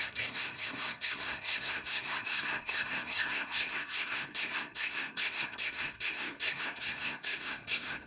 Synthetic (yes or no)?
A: yes